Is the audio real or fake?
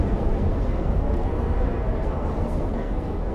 fake